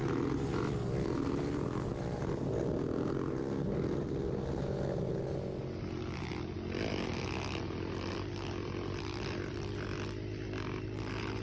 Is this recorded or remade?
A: recorded